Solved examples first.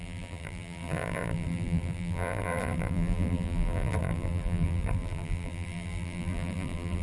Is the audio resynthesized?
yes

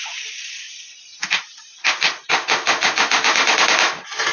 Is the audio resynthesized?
no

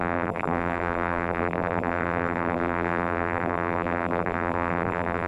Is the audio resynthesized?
yes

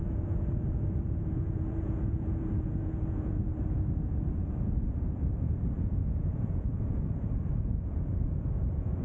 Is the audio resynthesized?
yes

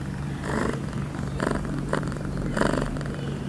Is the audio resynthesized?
yes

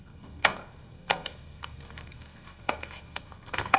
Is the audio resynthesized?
yes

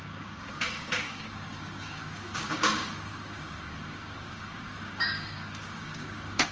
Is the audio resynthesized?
yes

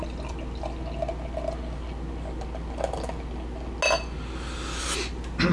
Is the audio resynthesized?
no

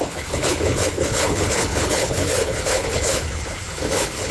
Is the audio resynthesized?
yes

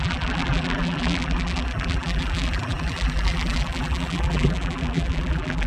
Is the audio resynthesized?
yes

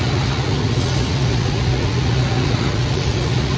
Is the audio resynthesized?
yes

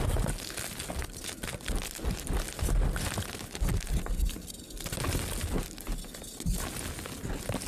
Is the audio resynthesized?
no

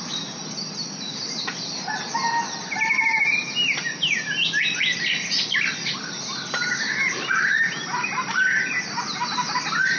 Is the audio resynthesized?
no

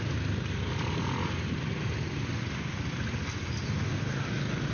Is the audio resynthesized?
no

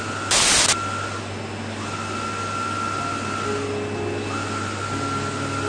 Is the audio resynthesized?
no